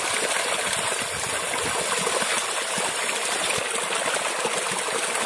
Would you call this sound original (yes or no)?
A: yes